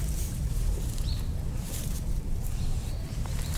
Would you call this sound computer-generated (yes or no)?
yes